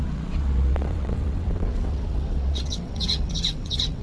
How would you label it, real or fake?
fake